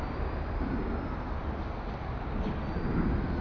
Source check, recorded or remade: recorded